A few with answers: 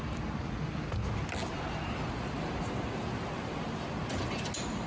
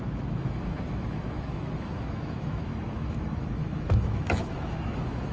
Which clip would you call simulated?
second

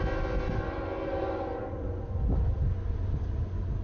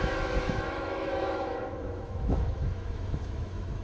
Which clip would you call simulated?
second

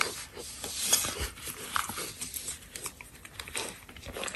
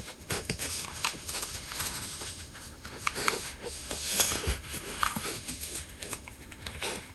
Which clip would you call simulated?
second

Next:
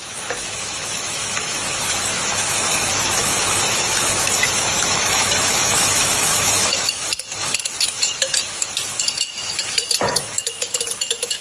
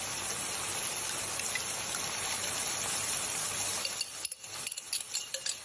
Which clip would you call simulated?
first